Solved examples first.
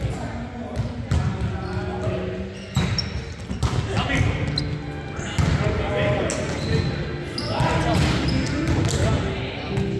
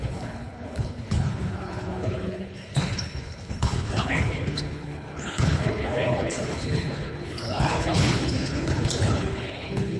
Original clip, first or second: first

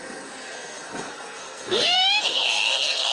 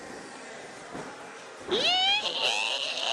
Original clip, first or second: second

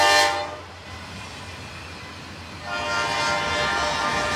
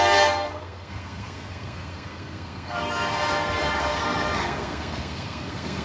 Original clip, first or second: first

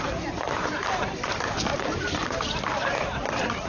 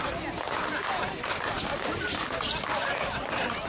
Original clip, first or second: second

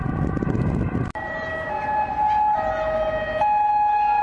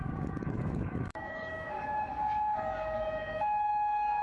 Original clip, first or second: first